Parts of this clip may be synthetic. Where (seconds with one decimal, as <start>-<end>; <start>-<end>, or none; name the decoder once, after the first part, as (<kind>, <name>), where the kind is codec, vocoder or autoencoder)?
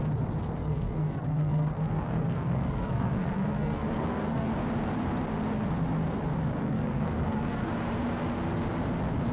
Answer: 0.6-4.5 (codec, SNAC); 6.6-7.7